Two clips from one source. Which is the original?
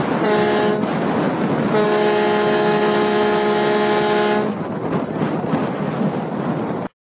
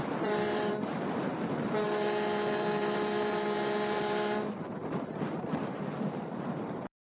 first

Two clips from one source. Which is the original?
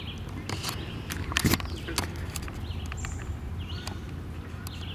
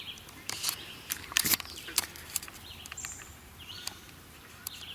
first